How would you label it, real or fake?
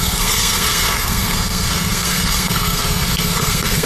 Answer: fake